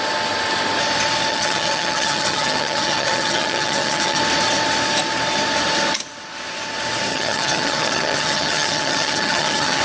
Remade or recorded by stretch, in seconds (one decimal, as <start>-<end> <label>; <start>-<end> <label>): 0.0-1.3 recorded; 1.3-4.2 remade; 4.2-7.1 recorded; 7.1-9.8 remade

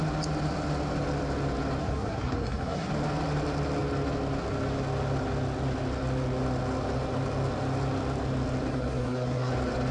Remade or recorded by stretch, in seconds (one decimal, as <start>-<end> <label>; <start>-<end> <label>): 0.0-1.8 recorded; 1.8-2.9 remade; 2.9-8.7 recorded; 8.7-9.5 remade; 9.5-9.9 recorded

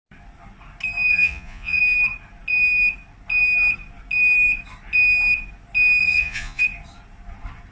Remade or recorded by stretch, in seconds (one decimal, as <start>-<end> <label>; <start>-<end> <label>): 0.0-1.1 recorded; 1.1-1.8 remade; 1.8-6.0 recorded; 6.0-6.6 remade; 6.6-7.7 recorded

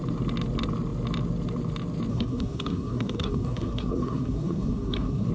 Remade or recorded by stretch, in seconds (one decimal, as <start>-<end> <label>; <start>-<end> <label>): 0.0-2.1 recorded; 2.1-5.3 remade

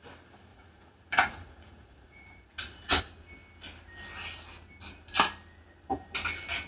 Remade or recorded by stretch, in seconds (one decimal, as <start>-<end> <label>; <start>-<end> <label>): 0.0-0.5 recorded; 0.5-2.9 remade; 2.9-6.7 recorded